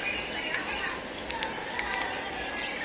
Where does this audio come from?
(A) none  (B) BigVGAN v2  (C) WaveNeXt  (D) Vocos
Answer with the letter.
B